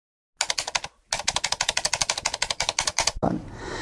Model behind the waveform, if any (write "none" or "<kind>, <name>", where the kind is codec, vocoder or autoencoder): none